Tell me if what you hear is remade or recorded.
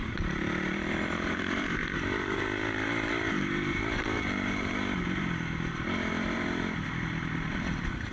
remade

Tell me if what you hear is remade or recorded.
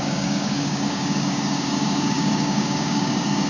remade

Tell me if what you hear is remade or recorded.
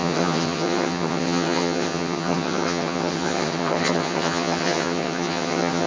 remade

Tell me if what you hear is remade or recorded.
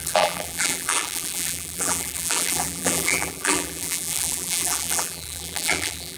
remade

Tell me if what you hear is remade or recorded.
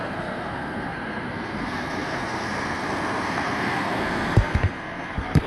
remade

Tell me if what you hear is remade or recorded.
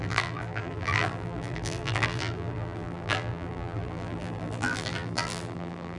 remade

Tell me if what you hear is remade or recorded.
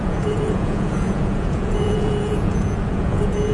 remade